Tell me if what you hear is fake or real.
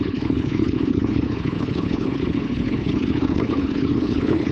fake